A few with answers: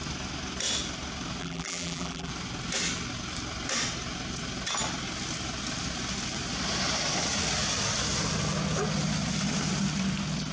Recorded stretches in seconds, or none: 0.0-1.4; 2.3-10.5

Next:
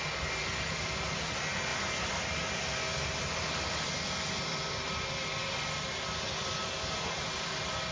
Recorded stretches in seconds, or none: 0.0-6.6; 7.4-7.9

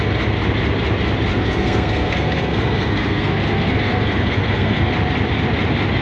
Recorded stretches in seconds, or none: 0.0-1.3; 4.9-6.0